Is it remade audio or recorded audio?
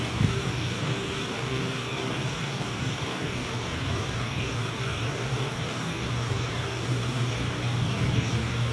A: remade